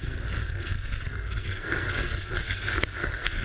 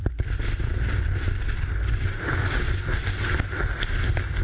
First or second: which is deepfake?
first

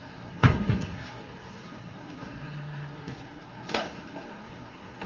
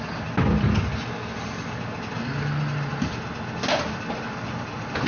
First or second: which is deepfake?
first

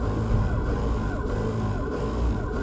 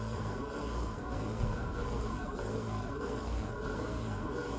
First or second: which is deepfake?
second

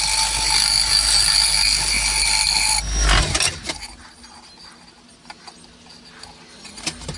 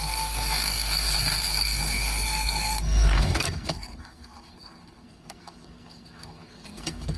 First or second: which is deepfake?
second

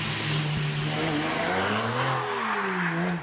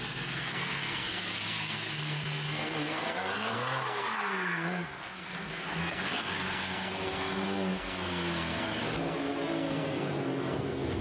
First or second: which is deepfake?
second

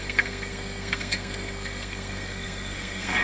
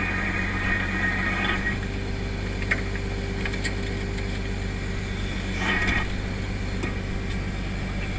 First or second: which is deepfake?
first